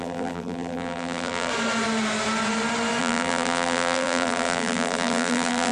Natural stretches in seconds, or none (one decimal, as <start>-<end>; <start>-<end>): 1.5-3.0